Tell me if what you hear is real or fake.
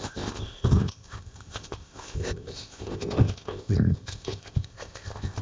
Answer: fake